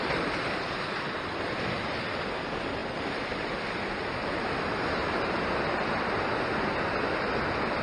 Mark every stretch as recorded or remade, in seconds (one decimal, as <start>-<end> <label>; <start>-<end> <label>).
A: 0.0-2.8 recorded; 2.8-3.3 remade; 3.3-7.8 recorded